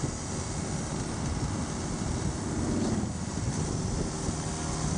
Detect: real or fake real